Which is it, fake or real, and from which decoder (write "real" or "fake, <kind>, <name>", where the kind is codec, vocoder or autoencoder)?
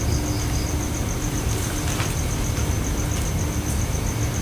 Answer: real